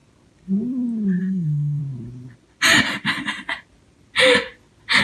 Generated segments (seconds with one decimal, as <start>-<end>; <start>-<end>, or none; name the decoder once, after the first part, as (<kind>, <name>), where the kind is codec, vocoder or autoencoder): 1.2-1.8 (codec, SNAC)